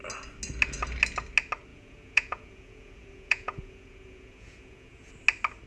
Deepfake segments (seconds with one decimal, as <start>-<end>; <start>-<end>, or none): 1.7-5.1